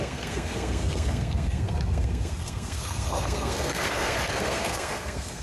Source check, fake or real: fake